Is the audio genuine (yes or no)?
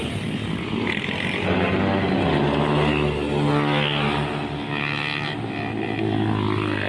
yes